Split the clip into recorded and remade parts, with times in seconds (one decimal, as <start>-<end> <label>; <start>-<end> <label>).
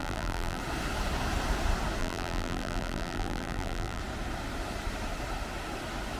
0.0-0.6 remade; 0.6-2.0 recorded; 2.0-4.0 remade; 4.0-6.2 recorded